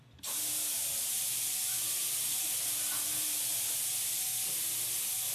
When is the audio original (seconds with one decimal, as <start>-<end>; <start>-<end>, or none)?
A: 0.0-5.3